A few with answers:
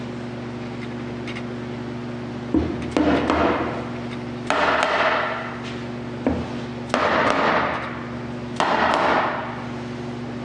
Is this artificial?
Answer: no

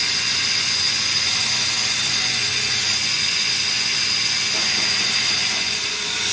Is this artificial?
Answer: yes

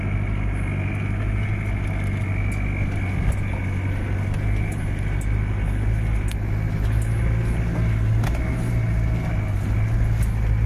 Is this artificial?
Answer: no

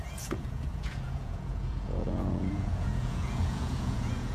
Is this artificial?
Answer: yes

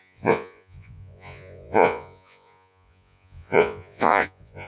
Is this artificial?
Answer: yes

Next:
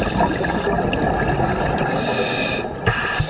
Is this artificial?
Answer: no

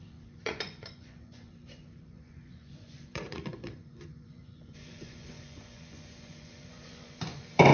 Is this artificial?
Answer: yes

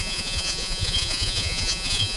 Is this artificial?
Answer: yes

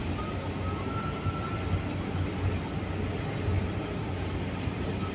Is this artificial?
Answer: no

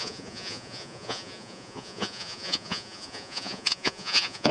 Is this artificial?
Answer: yes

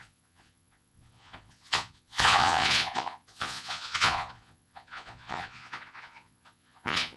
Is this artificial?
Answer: yes